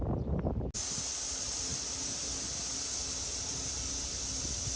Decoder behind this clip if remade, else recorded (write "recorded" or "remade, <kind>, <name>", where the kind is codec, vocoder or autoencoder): recorded